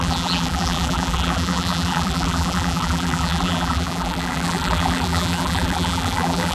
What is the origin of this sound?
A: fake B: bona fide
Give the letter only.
A